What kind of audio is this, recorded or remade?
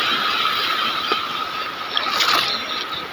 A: recorded